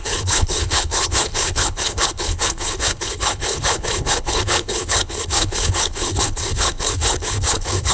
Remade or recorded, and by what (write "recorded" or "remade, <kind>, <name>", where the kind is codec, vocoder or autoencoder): remade, codec, HILCodec